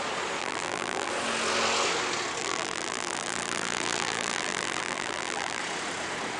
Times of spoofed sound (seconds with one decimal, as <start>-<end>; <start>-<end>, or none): 0.4-1.1; 2.4-5.6